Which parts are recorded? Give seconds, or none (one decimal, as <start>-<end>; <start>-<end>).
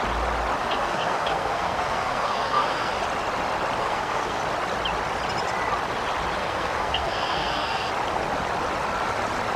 0.0-0.6; 2.9-3.8; 4.4-6.4; 7.9-9.6